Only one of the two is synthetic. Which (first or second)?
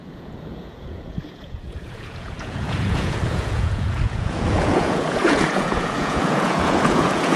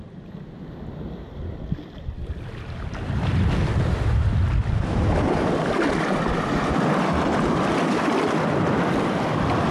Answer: first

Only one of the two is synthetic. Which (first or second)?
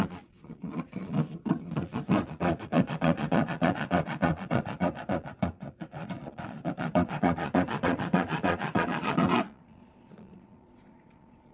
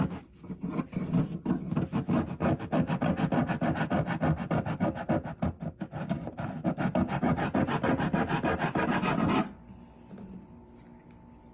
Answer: first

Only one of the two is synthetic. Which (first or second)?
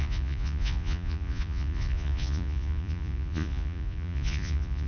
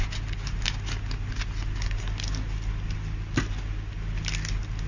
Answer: first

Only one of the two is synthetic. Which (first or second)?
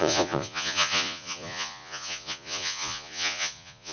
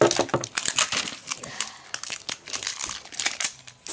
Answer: first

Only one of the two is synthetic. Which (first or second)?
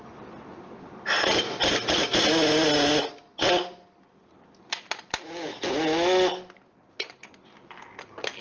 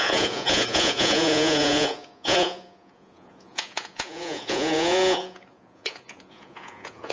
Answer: second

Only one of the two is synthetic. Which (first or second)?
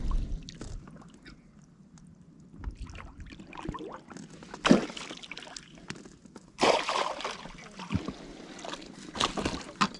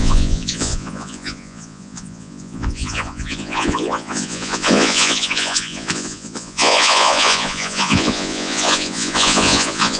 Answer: second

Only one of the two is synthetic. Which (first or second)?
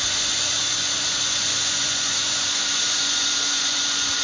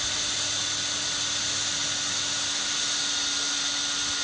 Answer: first